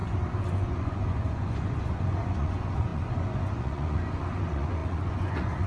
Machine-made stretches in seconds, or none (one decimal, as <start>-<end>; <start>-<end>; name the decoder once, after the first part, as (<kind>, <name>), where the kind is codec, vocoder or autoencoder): 0.5-5.7 (vocoder, Vocos)